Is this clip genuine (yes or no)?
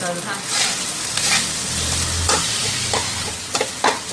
yes